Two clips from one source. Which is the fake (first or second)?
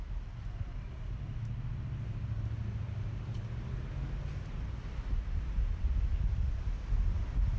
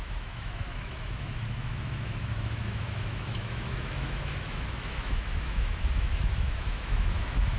second